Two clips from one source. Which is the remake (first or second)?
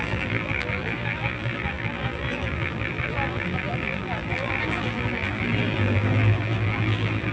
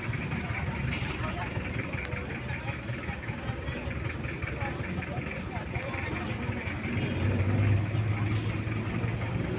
first